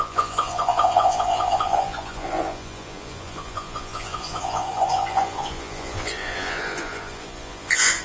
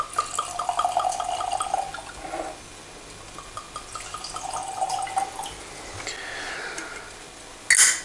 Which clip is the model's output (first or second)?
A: first